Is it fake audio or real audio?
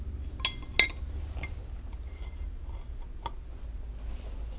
real